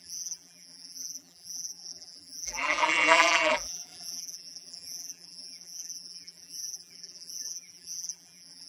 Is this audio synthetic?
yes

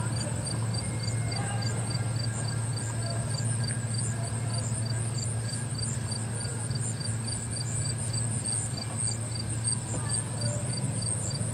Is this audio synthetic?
no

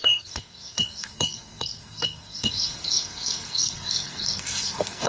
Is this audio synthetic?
yes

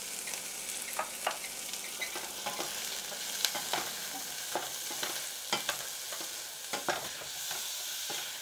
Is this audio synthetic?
no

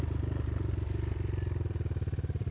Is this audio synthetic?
yes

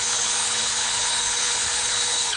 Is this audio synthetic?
yes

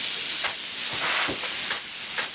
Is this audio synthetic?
no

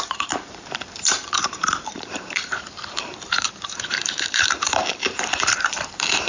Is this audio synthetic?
yes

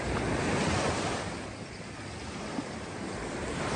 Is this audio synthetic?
no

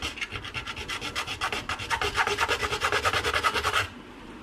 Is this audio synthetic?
no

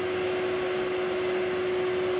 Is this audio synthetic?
no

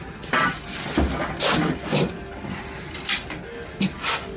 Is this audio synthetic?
no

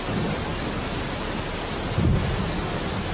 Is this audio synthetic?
no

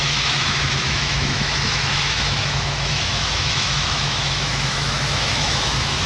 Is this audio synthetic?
yes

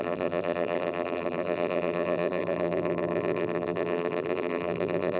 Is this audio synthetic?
yes